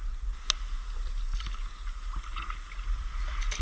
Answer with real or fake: real